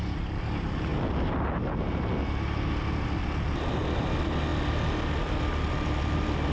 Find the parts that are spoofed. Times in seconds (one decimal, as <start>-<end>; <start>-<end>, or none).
none